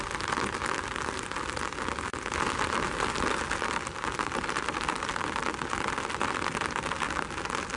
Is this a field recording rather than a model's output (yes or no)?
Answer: yes